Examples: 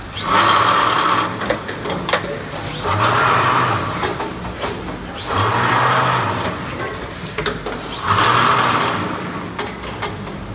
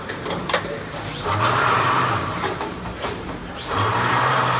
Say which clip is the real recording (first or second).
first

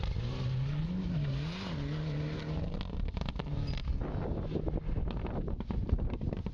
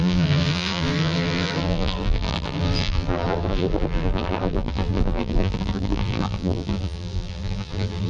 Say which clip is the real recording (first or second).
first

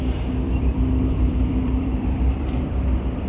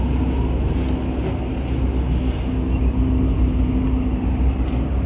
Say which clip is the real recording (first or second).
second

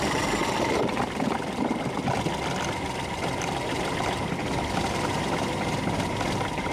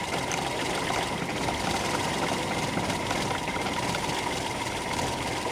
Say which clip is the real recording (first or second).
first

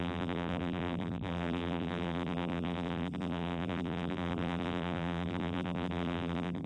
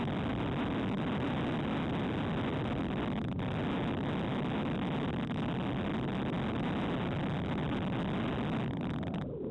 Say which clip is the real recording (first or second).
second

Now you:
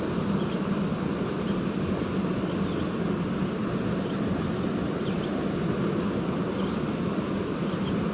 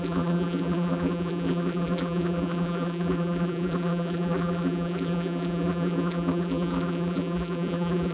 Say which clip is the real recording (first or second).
first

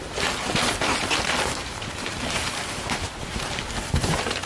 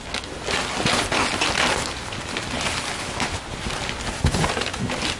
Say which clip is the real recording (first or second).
second